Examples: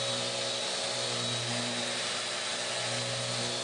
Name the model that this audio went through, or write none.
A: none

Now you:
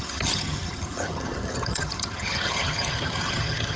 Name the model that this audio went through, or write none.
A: vocoder, HiFi-GAN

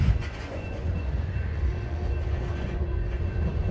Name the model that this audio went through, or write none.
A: vocoder, Vocos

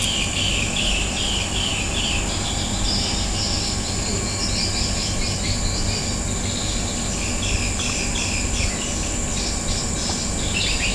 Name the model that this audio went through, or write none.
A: none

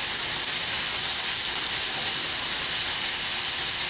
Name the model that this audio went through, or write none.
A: none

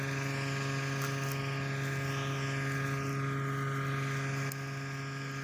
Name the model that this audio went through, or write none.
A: none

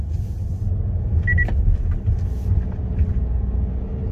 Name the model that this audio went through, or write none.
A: none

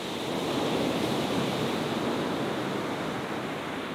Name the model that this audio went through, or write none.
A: none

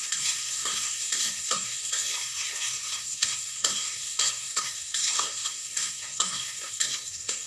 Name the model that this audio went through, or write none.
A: codec, SNAC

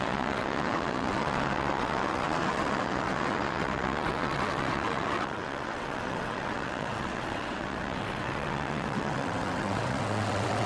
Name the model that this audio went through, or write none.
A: vocoder, WaveNeXt